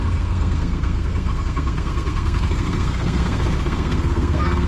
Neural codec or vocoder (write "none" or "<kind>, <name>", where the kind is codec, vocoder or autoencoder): codec, SNAC